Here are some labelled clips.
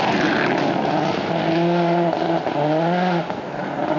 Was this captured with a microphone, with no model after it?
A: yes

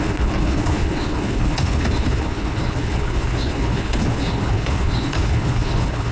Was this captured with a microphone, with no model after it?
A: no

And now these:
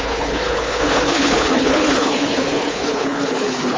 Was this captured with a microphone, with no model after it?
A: no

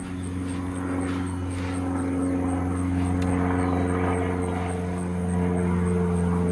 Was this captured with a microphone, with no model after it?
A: yes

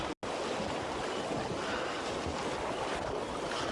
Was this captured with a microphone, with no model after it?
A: yes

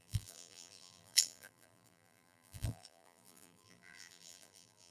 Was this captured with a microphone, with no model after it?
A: no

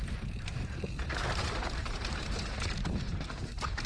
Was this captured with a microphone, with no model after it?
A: no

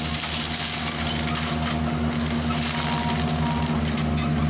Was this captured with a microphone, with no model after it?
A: yes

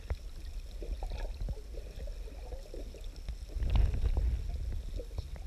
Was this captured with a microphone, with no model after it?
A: yes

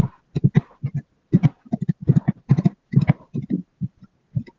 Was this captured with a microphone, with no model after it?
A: yes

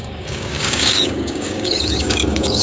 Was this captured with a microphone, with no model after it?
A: no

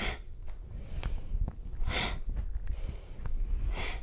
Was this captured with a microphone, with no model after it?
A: yes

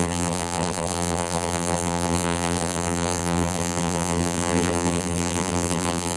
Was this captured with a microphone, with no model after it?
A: no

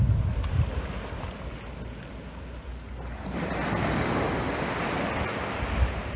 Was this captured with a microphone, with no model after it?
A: yes